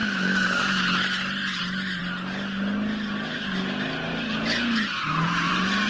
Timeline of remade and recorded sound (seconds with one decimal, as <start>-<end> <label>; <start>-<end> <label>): 0.0-5.9 recorded